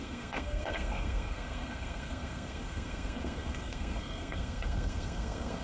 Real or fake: fake